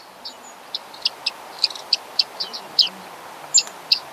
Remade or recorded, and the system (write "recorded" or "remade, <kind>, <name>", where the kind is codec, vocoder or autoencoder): recorded